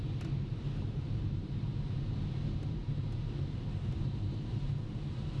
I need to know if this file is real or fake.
fake